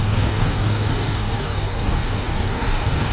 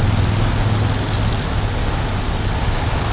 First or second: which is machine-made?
first